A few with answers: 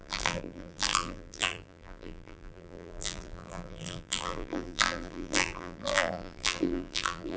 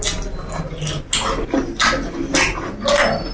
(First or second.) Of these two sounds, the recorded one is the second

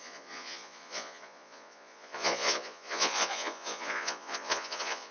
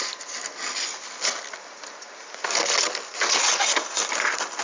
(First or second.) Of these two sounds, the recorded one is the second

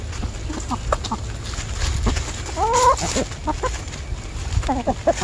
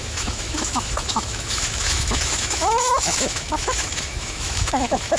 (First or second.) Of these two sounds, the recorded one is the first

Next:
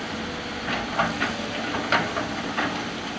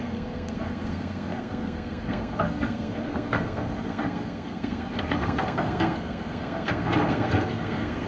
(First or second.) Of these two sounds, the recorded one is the first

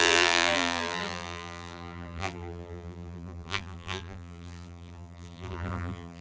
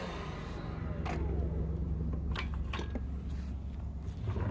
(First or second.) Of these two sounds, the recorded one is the second